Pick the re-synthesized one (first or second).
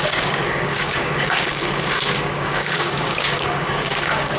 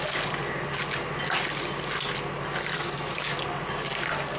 first